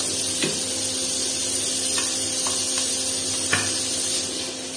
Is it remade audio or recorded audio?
recorded